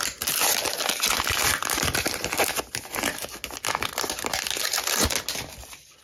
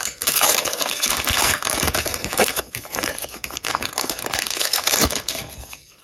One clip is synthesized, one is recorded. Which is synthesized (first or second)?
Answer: second